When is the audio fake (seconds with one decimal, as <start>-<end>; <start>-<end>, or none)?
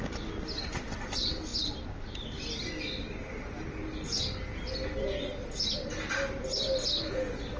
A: none